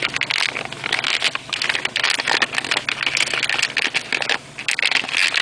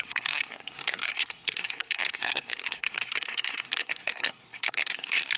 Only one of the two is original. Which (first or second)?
first